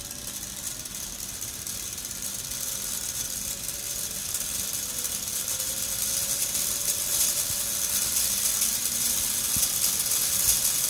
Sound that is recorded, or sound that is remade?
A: recorded